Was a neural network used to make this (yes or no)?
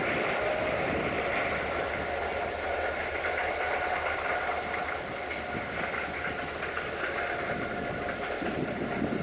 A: no